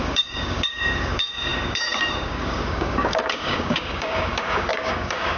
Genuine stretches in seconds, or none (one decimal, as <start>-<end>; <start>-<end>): none

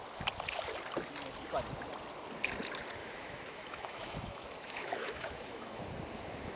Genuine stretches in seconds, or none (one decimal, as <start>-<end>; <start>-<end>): 0.0-3.0; 5.8-6.6

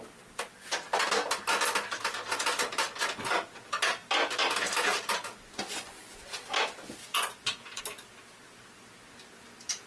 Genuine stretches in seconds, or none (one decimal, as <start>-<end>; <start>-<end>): 0.0-5.3; 6.3-7.0; 7.8-9.9

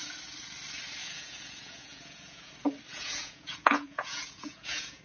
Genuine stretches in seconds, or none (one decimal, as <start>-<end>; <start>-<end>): 0.0-1.0; 2.5-2.9